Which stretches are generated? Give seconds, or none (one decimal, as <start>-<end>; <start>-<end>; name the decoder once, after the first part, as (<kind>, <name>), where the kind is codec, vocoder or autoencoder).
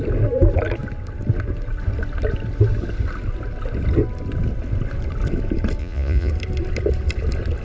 5.8-6.3 (vocoder, Vocos)